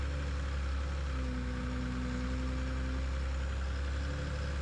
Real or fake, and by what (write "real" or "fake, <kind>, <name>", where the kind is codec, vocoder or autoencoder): real